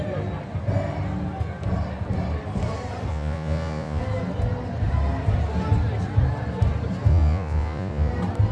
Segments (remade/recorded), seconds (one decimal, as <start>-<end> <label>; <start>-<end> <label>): 0.0-3.1 recorded; 3.1-4.0 remade; 4.0-7.1 recorded; 7.1-8.1 remade; 8.1-8.5 recorded